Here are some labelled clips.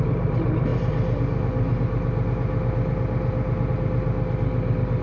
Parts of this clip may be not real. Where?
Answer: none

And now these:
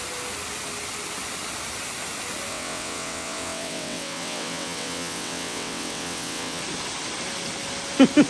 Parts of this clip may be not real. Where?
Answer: 2.5-6.6